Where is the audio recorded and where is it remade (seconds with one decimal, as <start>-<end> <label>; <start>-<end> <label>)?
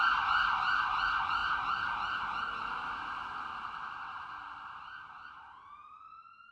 0.0-6.5 recorded